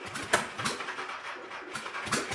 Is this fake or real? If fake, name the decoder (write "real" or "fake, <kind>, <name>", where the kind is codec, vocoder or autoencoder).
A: real